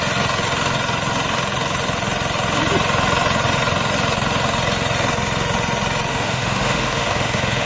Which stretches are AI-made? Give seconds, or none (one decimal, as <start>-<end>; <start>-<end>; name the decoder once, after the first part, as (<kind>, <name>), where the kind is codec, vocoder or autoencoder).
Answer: 6.1-7.7 (autoencoder, DAC-VAE)